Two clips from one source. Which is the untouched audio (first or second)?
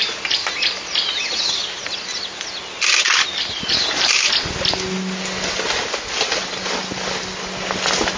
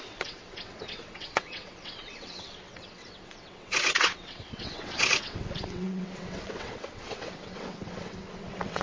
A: first